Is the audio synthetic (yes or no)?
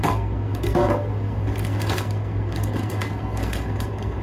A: yes